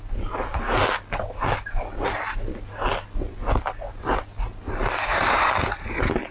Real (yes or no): yes